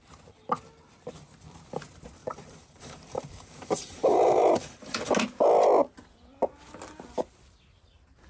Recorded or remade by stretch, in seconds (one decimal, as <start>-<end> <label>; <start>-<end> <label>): 0.0-2.2 recorded; 2.2-5.1 remade; 5.1-8.3 recorded